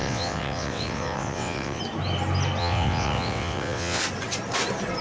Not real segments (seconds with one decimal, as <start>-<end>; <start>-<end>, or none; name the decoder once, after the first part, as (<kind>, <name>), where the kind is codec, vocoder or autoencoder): 0.0-1.8 (vocoder, WaveNeXt); 2.6-4.0